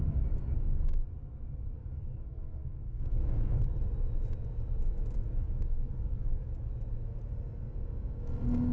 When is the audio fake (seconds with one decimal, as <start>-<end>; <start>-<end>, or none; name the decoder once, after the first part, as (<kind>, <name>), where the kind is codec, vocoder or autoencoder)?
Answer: 1.8-3.7 (codec, DAC); 5.3-6.7